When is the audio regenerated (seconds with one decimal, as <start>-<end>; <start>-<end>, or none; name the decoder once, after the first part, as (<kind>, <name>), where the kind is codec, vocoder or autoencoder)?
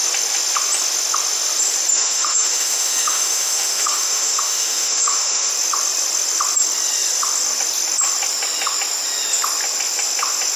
1.9-5.5 (autoencoder, DAC-VAE)